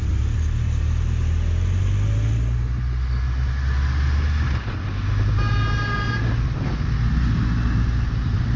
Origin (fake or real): real